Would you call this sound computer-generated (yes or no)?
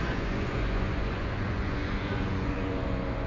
yes